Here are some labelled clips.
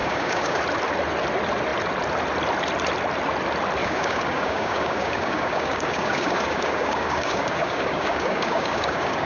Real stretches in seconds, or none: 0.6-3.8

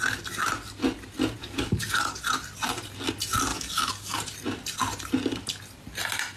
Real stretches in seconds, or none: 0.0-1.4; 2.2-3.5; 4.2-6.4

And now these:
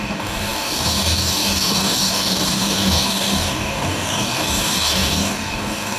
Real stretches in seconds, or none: none

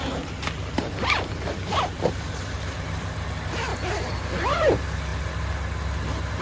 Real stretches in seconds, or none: 0.0-6.4

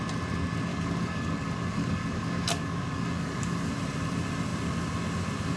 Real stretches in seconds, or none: 0.0-0.7; 3.7-5.6